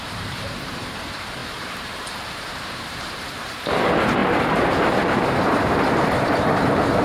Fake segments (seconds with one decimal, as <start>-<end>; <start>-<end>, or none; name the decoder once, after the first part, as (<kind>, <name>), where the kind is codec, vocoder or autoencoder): 0.0-7.0 (vocoder, BigVGAN v2)

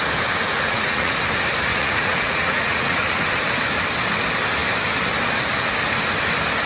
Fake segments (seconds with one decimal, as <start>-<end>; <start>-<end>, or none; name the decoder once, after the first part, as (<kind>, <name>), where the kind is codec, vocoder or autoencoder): 0.5-1.1 (vocoder, Vocos); 1.7-3.2

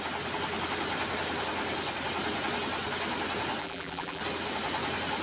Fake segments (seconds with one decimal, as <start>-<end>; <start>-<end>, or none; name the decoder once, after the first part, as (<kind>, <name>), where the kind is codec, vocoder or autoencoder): 3.6-4.2 (vocoder, BigVGAN v2)

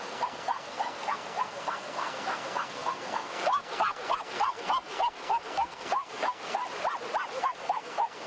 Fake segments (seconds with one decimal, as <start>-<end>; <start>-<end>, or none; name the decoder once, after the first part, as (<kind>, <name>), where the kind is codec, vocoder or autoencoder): 0.0-6.6 (codec, SNAC); 7.4-8.3

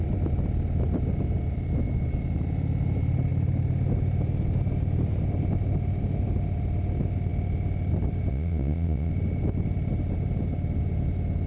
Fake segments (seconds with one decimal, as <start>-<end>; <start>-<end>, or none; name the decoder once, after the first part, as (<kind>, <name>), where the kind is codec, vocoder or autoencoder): 8.3-9.1 (vocoder, Vocos)

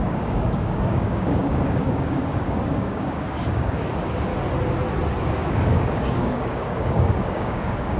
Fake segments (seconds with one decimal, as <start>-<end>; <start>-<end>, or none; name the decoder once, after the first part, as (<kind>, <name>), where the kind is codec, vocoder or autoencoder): 0.0-4.3 (codec, DAC); 5.2-8.0

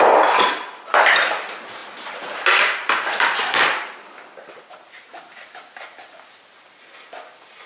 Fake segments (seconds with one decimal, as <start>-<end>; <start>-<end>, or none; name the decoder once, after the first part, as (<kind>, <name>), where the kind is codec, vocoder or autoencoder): none